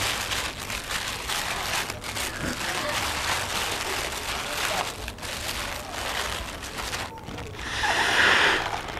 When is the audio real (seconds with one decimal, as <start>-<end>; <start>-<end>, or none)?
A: 0.0-9.0